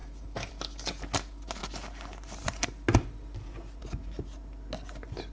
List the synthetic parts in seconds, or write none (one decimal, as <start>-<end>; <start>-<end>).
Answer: 0.0-0.5